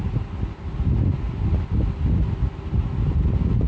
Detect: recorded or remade recorded